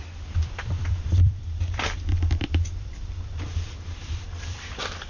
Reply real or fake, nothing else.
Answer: fake